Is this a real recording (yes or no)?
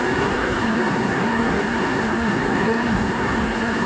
no